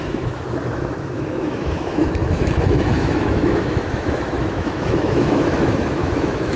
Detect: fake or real fake